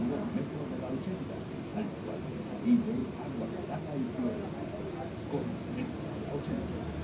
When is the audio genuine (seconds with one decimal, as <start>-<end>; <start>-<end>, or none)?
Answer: 0.0-7.0